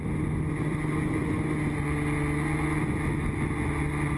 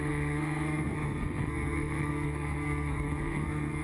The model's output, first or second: second